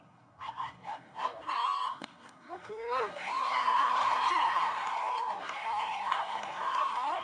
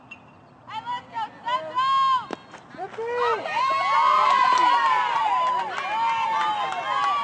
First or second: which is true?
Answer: second